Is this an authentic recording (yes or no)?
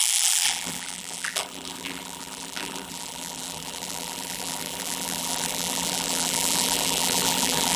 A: no